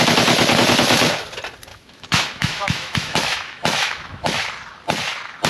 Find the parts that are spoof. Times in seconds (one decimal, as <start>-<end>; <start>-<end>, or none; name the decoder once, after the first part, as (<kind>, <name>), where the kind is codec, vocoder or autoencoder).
1.7-4.4 (autoencoder, DAC-VAE)